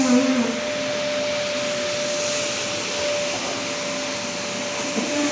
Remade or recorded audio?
recorded